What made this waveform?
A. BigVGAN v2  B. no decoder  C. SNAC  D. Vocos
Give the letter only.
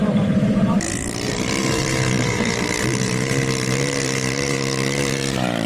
A